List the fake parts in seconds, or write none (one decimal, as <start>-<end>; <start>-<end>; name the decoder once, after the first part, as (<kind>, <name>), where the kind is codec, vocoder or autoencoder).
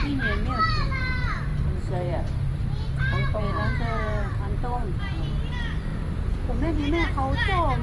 1.5-5.2 (vocoder, BigVGAN v2); 5.9-6.8